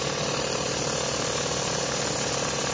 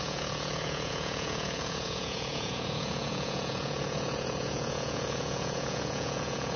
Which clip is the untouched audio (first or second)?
first